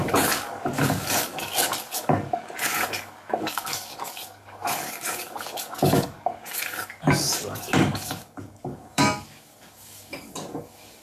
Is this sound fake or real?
fake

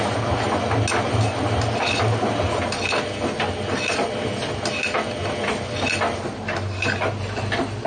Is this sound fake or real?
real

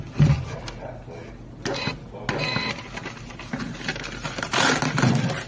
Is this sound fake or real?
real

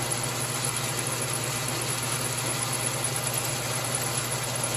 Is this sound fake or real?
real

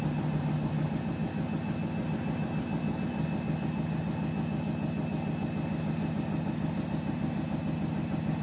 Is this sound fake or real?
real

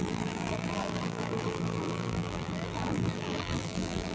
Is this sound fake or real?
fake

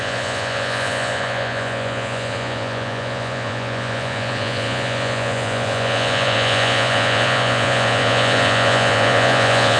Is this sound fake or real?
fake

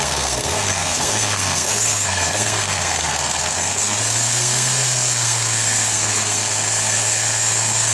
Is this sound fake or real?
fake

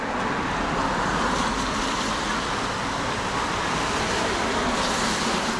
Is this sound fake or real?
real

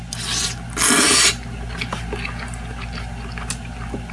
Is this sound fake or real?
real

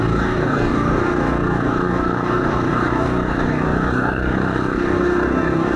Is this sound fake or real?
fake